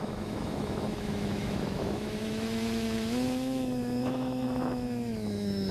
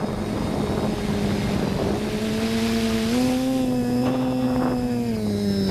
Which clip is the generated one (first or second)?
first